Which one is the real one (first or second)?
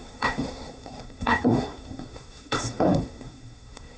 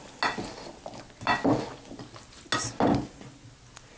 second